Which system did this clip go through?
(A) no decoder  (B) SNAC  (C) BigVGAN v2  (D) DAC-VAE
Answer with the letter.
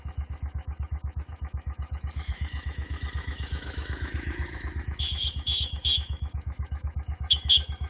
D